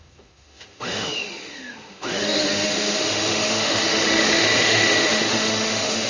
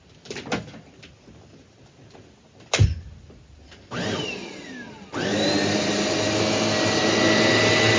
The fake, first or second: first